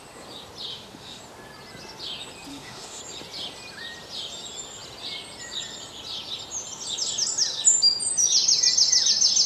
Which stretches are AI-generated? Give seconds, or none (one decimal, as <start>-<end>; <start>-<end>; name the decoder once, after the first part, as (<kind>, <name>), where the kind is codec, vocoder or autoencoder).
0.7-1.2 (autoencoder, DAC-VAE); 2.5-3.0